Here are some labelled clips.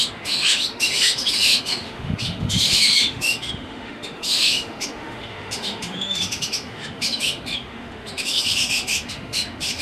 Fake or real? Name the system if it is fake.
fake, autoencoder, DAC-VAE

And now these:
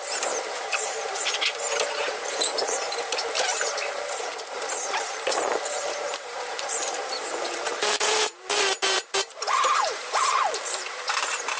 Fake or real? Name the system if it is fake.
fake, vocoder, BigVGAN v2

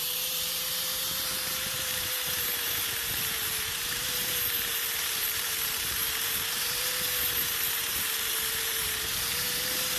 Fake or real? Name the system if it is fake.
fake, vocoder, BigVGAN v2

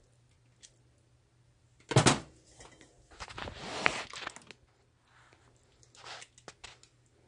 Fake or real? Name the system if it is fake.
real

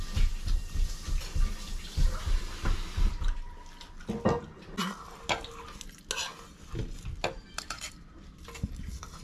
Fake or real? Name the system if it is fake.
real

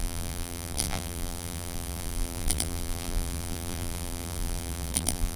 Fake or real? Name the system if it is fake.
fake, vocoder, BigVGAN v2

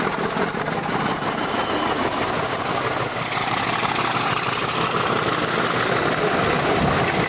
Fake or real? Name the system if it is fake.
real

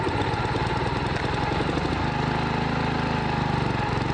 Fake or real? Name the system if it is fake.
real